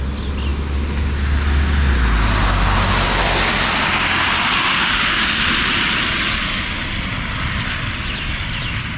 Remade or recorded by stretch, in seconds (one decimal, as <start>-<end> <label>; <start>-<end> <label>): 0.0-9.0 recorded